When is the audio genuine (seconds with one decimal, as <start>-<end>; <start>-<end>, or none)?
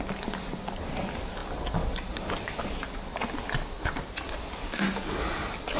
0.0-5.8